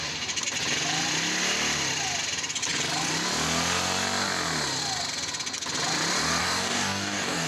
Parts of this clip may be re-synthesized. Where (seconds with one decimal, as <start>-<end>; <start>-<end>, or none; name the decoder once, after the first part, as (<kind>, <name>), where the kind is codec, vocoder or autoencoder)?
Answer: 6.4-7.5 (codec, DAC)